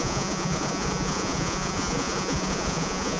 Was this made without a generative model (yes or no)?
no